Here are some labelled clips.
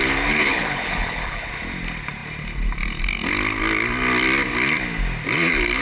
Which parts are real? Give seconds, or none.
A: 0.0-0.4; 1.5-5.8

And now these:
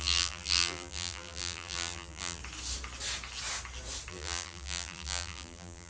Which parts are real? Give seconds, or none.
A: 2.4-4.1

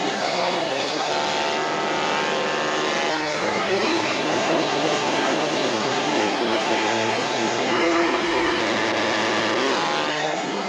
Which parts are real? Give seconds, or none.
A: 1.1-3.1; 8.6-10.1

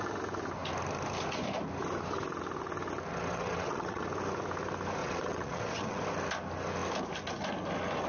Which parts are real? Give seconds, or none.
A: 0.0-3.1; 4.0-5.0; 6.0-8.1

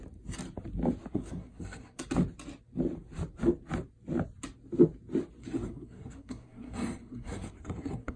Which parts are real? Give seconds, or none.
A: 0.0-1.1; 2.0-5.4

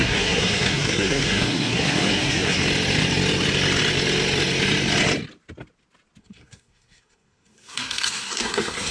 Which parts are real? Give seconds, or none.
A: 2.6-6.2

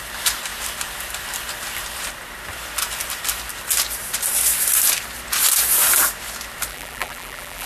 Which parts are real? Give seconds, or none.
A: 0.0-6.7

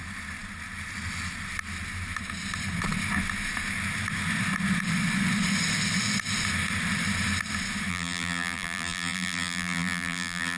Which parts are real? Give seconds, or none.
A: 0.0-7.9